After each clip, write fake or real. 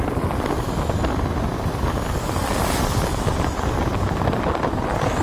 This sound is real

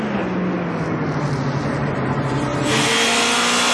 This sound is real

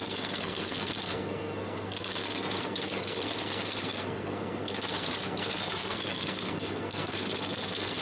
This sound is fake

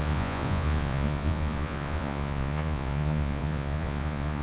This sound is fake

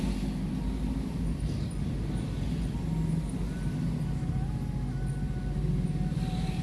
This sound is real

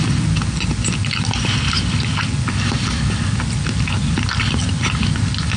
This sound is real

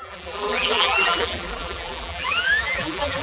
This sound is fake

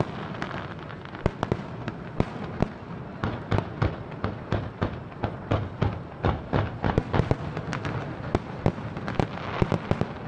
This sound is real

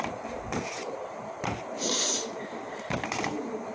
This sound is fake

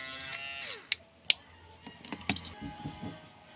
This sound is real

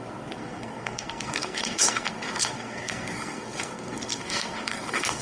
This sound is fake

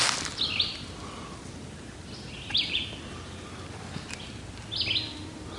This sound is real